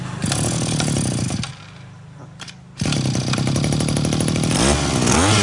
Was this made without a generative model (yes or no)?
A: yes